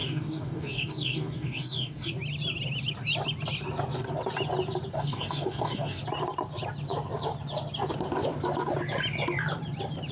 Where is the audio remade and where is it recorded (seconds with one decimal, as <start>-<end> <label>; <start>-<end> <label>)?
0.0-2.1 remade; 2.1-4.9 recorded; 4.9-6.0 remade; 6.0-10.1 recorded